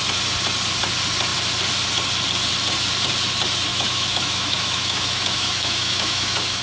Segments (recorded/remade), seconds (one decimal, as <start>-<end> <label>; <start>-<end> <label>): 0.0-3.7 recorded; 3.7-6.6 remade